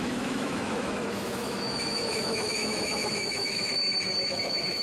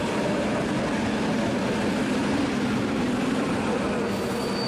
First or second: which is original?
second